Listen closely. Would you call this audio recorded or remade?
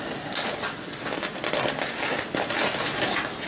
recorded